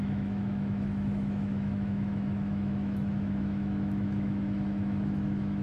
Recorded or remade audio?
remade